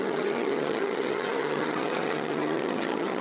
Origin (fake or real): fake